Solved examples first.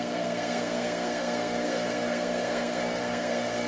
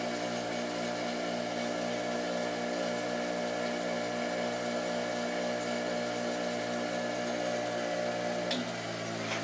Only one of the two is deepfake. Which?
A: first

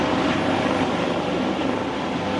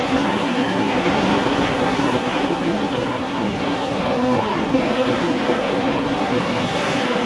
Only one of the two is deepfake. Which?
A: second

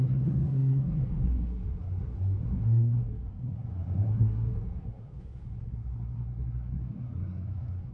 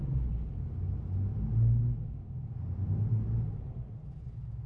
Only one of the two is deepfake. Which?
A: first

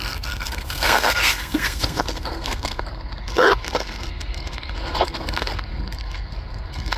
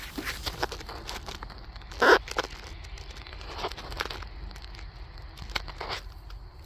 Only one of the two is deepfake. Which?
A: first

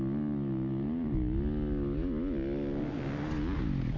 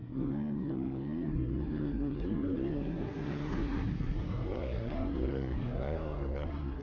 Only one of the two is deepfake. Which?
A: second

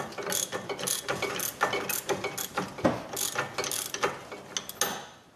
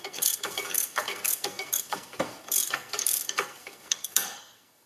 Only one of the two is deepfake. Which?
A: second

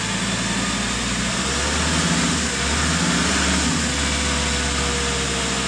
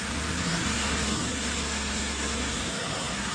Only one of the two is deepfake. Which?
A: second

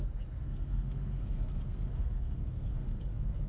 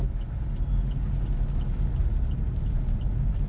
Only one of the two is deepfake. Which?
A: first